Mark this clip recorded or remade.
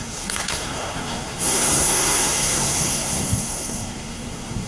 remade